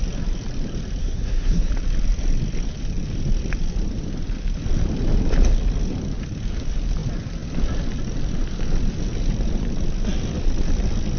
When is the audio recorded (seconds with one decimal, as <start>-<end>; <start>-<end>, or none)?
0.0-1.0; 1.7-11.2